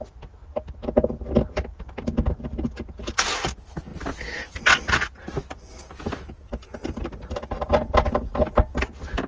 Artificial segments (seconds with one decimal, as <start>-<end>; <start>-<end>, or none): none